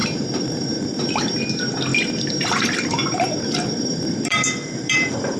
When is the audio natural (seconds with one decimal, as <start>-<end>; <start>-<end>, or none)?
1.4-1.9